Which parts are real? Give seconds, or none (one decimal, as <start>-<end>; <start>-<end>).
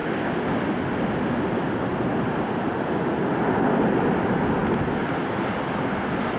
0.0-6.4